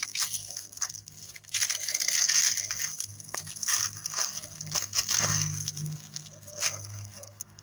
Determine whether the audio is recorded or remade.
remade